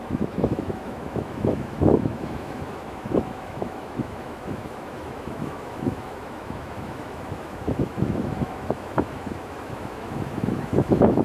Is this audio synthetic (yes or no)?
yes